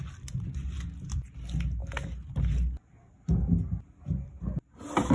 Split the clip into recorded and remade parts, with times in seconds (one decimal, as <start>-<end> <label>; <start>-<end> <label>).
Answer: 0.0-5.1 recorded